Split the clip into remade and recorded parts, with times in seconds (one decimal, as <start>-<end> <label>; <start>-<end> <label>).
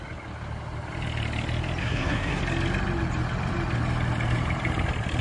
0.0-1.8 recorded; 1.8-2.4 remade; 2.4-5.2 recorded